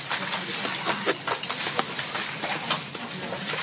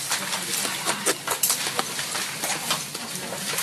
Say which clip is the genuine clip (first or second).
second